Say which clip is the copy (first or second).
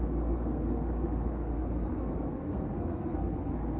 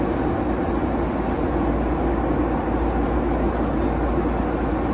first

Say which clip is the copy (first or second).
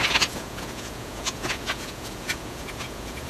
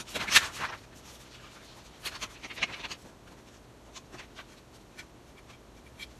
first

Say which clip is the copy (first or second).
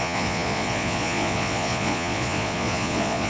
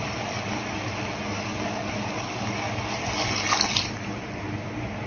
first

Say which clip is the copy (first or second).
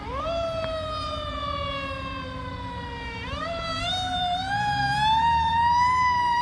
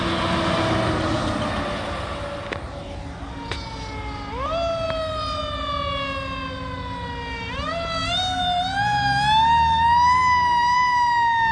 first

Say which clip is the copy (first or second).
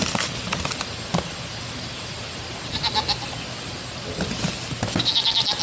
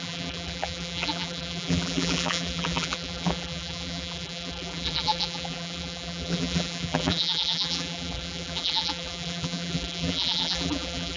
second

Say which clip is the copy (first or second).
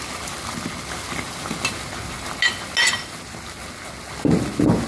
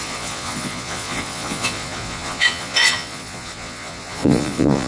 second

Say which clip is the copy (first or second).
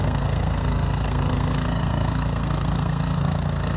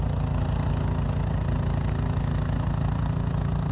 first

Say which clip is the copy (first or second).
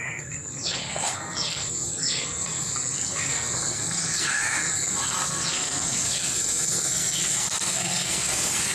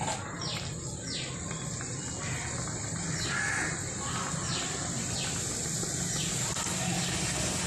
first